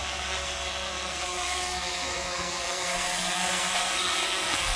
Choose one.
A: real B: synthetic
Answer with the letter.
B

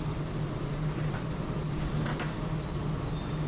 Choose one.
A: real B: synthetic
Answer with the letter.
A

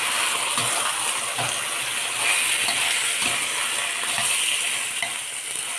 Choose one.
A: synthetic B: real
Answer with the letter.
B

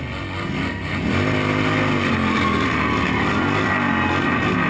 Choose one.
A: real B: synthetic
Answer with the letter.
A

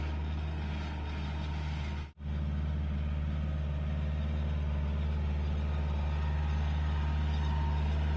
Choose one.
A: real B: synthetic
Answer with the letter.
A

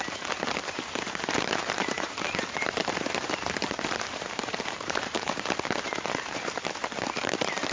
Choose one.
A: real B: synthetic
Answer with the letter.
B